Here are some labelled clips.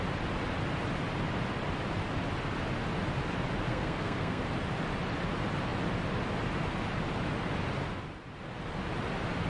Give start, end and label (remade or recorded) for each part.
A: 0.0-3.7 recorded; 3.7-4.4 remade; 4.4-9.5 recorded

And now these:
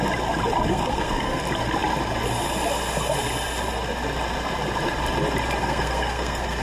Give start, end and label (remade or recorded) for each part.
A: 0.0-0.7 recorded; 0.7-1.4 remade; 1.4-5.6 recorded; 5.6-6.6 remade

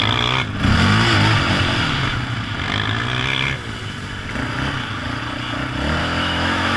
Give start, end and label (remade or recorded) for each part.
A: 0.0-6.0 recorded; 6.0-6.8 remade